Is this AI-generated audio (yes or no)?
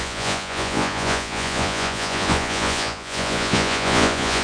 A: yes